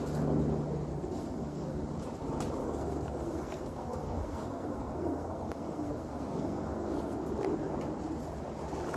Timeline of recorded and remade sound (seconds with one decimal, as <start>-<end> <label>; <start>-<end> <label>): 0.0-0.9 recorded; 0.9-1.8 remade; 1.8-2.6 recorded; 2.6-7.3 remade; 7.3-9.0 recorded